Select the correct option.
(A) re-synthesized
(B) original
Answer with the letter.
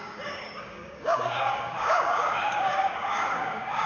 A